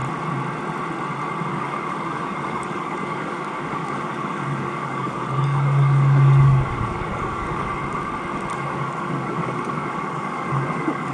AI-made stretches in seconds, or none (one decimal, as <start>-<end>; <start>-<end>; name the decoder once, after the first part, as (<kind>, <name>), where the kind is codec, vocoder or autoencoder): 1.5-7.7 (codec, DAC); 8.5-11.1